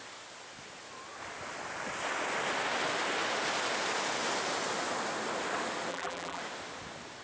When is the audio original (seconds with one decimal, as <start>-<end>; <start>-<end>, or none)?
0.0-5.9; 6.4-7.2